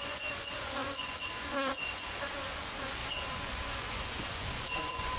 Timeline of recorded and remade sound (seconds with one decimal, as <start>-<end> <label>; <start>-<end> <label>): 0.0-5.2 remade